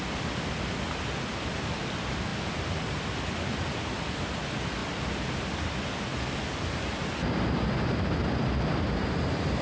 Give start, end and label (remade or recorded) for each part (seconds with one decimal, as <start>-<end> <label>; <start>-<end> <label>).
0.0-9.6 recorded